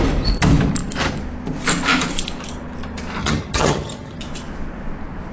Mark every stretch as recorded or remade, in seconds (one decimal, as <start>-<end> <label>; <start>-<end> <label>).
0.0-3.2 recorded; 3.2-4.2 remade; 4.2-5.3 recorded